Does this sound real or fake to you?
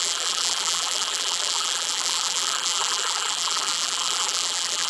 fake